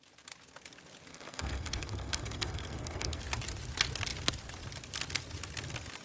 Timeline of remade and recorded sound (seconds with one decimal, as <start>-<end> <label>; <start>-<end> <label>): 0.0-1.1 recorded; 1.1-3.2 remade; 3.2-6.0 recorded